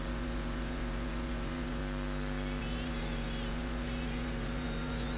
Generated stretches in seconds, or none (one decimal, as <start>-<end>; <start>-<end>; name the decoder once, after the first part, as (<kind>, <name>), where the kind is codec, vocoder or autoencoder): 0.0-1.8 (vocoder, Vocos); 2.6-5.2

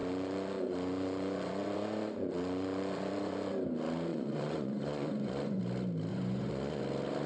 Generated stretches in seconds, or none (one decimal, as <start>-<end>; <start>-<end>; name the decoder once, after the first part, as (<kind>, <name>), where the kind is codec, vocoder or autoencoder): 0.0-3.5 (vocoder, Vocos); 4.1-5.6; 6.1-6.8